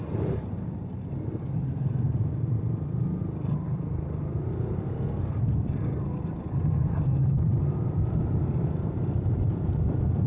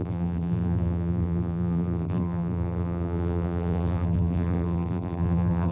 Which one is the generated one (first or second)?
second